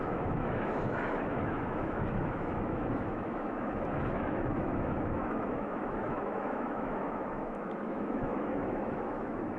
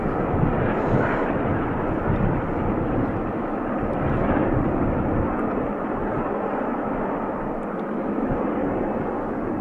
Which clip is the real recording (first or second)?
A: second